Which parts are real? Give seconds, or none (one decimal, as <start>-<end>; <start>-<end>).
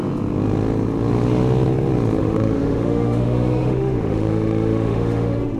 0.0-2.2